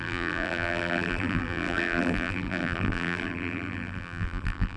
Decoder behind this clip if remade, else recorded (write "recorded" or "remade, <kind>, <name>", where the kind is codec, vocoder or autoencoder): remade, vocoder, BigVGAN v2